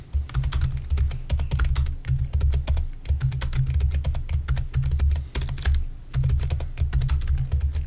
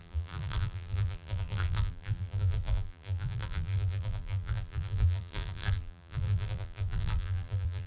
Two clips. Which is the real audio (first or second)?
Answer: first